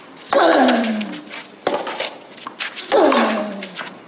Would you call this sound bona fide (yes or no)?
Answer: yes